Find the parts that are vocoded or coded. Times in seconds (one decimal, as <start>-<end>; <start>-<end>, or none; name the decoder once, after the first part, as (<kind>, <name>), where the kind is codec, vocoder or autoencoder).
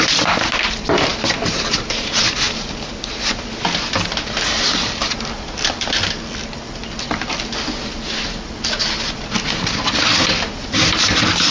none